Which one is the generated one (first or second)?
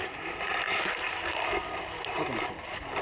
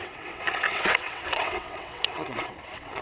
second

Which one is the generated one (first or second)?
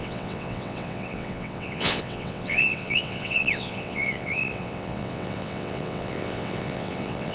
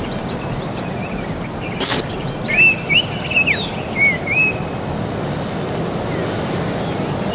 first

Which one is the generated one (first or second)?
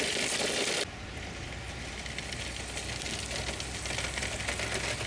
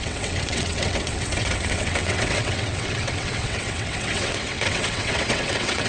second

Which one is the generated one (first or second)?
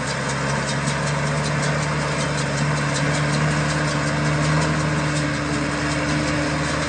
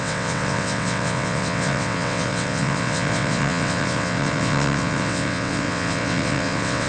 second